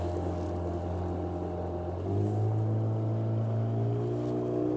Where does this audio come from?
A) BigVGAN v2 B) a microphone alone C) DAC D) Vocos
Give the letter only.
B